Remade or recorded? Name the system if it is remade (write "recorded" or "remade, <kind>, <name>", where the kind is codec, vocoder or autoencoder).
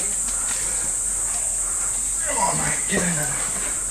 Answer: recorded